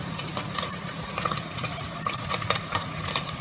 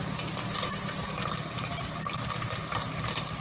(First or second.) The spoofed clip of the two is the first